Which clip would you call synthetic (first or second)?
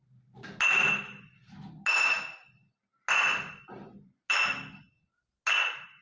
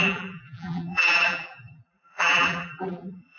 second